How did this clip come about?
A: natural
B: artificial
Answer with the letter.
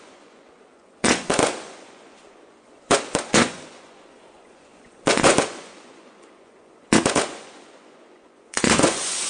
B